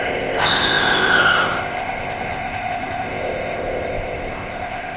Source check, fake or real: fake